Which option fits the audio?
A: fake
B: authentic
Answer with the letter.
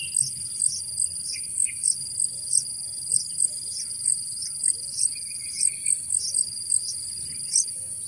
A